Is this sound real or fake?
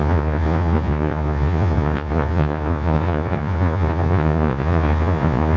fake